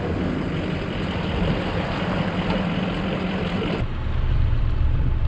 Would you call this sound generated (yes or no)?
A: no